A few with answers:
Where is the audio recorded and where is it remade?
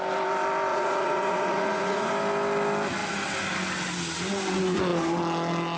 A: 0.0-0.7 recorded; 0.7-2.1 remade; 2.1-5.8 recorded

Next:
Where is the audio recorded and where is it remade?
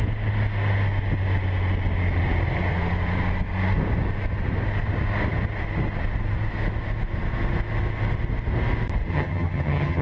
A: 0.0-9.1 recorded; 9.1-10.0 remade